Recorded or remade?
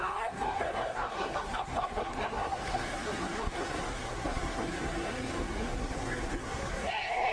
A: remade